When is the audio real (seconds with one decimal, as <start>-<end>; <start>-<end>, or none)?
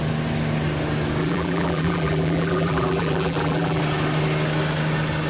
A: 0.0-1.2; 3.8-5.3